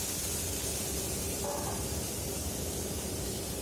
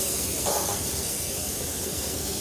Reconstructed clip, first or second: second